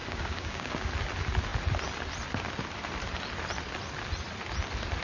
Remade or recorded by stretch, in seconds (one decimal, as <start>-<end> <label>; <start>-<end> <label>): 0.0-0.9 remade; 0.9-5.0 recorded